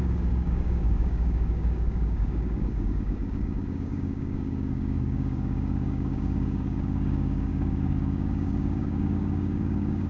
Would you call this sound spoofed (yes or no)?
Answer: yes